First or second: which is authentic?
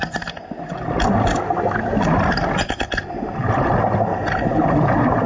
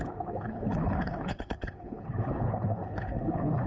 first